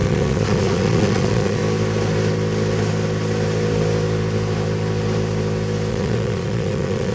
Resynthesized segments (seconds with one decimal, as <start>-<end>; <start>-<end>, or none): 0.0-1.6; 5.9-7.1